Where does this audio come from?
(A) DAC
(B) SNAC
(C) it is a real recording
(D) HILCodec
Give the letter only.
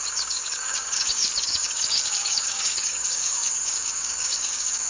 A